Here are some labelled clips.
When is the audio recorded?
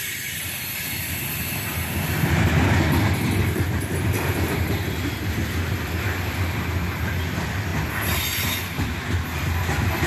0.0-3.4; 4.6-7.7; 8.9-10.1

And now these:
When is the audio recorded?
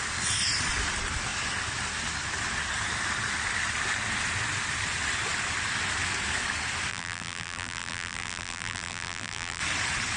0.0-6.9; 9.6-10.2